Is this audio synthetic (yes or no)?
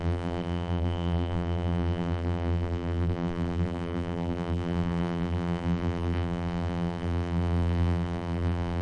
yes